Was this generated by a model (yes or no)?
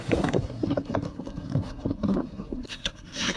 yes